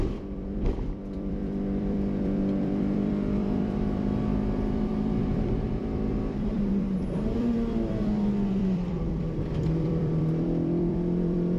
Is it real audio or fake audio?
fake